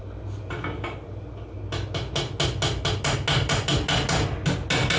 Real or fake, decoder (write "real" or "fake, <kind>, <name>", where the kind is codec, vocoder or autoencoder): real